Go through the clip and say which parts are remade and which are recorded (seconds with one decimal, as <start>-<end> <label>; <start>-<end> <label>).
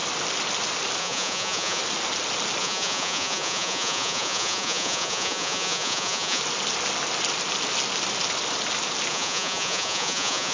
0.0-1.0 recorded; 1.0-1.8 remade; 1.8-2.6 recorded; 2.6-6.4 remade; 6.4-9.1 recorded; 9.1-10.5 remade